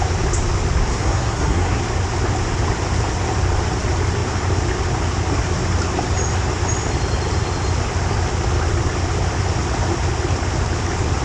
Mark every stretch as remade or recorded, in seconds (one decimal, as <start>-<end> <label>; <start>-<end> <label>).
0.0-0.9 recorded; 0.9-1.8 remade; 1.8-11.2 recorded